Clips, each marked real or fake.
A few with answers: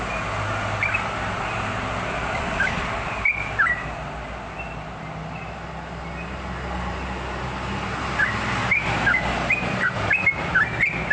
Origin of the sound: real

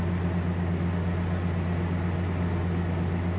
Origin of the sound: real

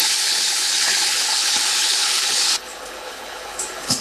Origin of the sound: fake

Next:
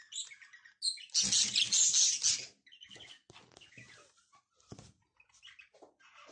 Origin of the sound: real